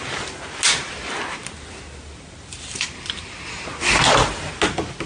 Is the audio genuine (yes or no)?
yes